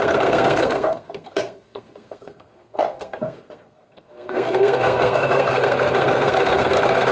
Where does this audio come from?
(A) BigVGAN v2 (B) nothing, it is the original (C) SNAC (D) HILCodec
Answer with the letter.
C